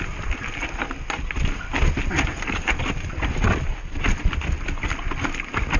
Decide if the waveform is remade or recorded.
recorded